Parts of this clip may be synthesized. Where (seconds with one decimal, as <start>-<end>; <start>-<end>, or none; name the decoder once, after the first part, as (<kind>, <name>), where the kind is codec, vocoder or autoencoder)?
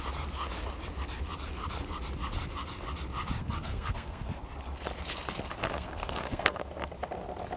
3.4-4.3 (codec, SNAC); 5.7-6.7